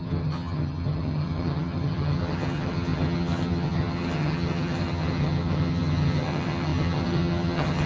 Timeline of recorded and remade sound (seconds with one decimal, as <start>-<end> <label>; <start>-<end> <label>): 0.0-7.9 remade